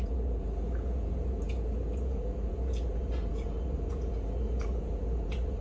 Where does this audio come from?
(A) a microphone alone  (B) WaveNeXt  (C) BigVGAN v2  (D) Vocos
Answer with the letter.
D